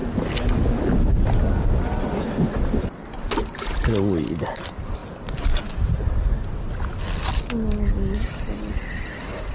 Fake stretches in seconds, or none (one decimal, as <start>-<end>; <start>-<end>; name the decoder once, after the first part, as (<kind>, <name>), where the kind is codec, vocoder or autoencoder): none